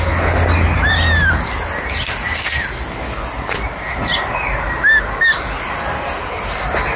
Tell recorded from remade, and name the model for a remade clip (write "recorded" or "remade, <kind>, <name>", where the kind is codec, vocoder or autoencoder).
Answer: recorded